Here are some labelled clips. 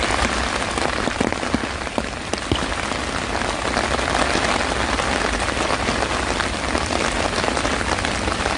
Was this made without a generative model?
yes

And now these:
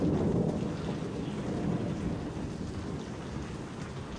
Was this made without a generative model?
yes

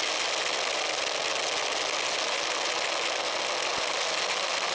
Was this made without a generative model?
yes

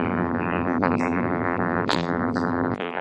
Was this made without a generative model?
no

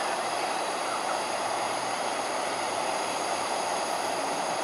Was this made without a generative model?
no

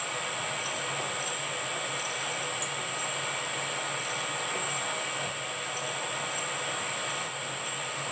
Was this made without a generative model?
yes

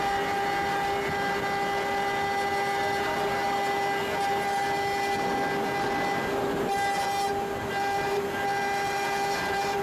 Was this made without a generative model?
yes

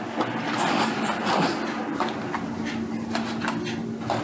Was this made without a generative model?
yes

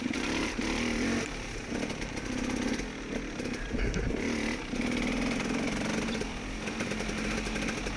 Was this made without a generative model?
yes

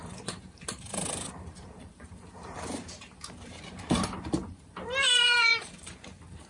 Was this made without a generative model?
no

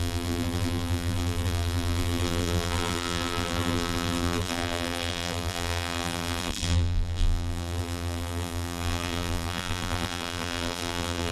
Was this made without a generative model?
no